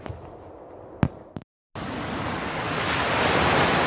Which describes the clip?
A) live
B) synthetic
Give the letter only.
A